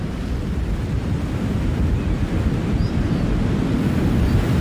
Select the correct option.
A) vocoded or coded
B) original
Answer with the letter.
B